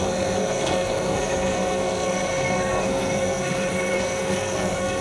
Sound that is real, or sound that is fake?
fake